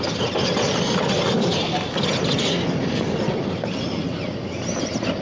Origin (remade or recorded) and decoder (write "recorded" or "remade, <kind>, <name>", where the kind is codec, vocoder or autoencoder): recorded